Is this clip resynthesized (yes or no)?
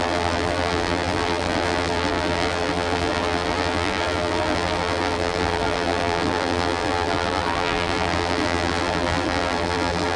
yes